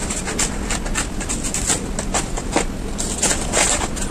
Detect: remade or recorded recorded